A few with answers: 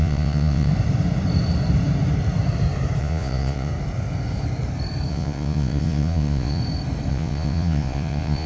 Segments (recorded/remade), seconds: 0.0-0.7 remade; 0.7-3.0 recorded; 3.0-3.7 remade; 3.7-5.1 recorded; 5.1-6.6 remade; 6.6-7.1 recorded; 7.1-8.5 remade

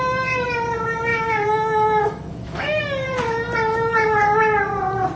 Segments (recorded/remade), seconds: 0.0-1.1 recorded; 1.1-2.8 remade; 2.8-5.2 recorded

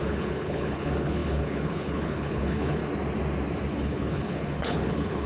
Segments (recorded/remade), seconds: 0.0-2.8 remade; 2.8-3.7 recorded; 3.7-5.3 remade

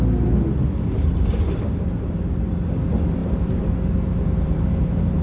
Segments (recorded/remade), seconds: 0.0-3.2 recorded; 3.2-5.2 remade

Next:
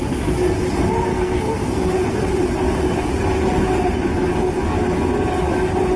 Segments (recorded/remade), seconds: 0.0-1.1 recorded; 1.1-2.3 remade; 2.3-6.0 recorded

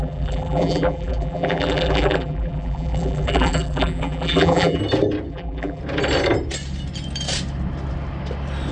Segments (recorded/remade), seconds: 0.0-4.8 remade; 4.8-5.3 recorded; 5.3-5.8 remade; 5.8-8.7 recorded